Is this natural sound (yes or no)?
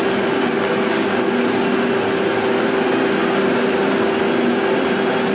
yes